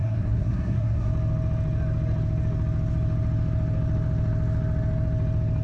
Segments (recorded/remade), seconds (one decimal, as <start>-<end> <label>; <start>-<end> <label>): 0.0-1.1 remade; 1.1-5.6 recorded